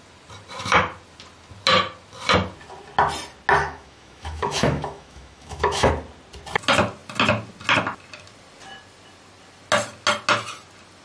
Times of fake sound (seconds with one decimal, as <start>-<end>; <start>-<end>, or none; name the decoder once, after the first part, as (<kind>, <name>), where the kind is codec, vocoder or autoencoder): 3.6-5.9 (autoencoder, DAC-VAE)